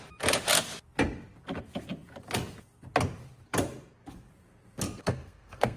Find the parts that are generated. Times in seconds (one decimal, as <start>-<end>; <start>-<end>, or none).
5.0-5.8